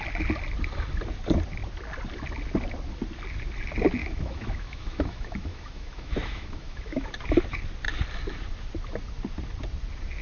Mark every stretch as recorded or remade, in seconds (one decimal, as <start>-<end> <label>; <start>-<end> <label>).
0.0-4.0 recorded; 4.0-7.1 remade; 7.1-10.2 recorded